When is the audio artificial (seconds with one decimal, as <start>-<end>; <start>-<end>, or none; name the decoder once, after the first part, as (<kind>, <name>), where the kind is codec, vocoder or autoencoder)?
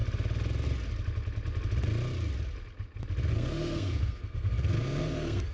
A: 3.3-5.5 (codec, SNAC)